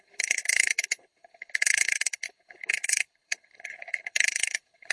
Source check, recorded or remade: remade